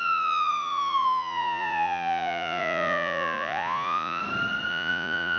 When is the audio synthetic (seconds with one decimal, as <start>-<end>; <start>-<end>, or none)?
0.0-4.2; 4.7-5.4